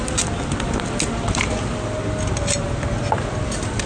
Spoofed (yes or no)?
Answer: no